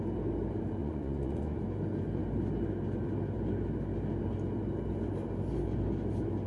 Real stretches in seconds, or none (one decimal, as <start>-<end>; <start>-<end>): 0.0-0.8; 1.6-6.5